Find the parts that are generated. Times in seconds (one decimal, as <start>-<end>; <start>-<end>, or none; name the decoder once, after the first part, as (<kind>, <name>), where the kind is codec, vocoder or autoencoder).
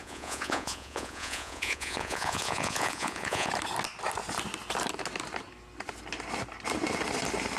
0.0-3.5 (vocoder, Vocos)